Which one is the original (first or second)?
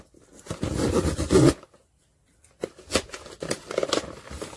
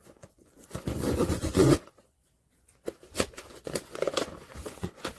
first